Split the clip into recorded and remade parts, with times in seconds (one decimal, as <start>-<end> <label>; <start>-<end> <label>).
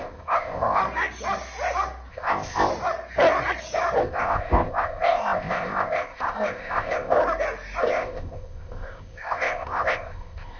0.0-0.8 remade; 0.8-2.1 recorded; 2.1-2.7 remade; 2.7-4.0 recorded; 4.0-7.2 remade; 7.2-7.8 recorded; 7.8-10.6 remade